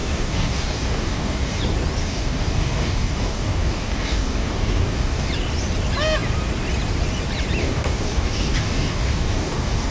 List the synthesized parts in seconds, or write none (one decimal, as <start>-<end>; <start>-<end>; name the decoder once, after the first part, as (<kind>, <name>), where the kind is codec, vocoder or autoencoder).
0.0-1.6 (codec, DAC); 2.0-5.3; 7.6-9.9